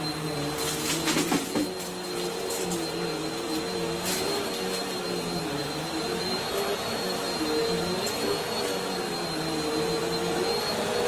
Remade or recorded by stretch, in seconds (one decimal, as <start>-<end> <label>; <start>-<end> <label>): 0.0-11.1 recorded